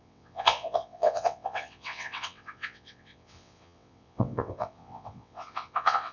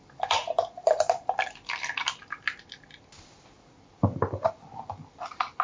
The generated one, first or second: first